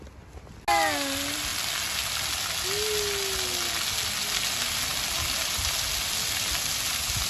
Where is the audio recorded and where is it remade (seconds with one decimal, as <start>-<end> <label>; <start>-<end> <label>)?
0.0-7.3 recorded